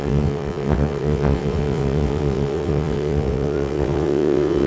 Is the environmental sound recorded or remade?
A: remade